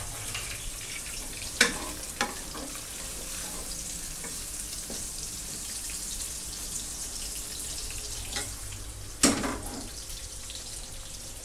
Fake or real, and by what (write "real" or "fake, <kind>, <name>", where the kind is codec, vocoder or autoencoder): fake, vocoder, BigVGAN v2